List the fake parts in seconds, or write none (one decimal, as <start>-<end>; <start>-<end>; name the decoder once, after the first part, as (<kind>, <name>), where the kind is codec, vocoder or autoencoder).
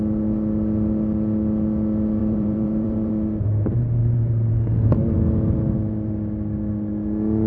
2.2-3.1 (vocoder, BigVGAN v2); 4.0-4.5